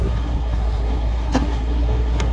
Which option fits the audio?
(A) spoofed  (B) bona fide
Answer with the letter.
A